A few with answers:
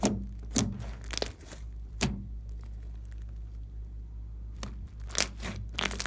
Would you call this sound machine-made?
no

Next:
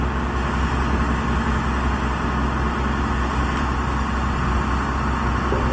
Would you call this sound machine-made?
no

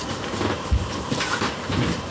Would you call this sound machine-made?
yes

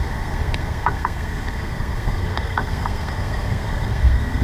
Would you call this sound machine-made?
yes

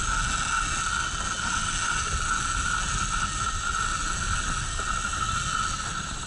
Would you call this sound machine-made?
no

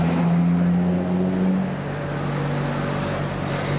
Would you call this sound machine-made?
no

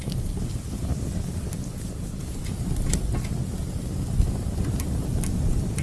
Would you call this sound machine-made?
no